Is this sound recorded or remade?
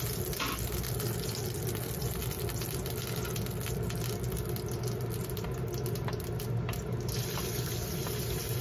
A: recorded